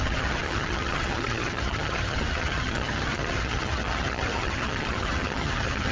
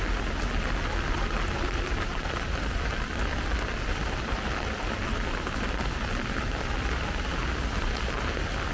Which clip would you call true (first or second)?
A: second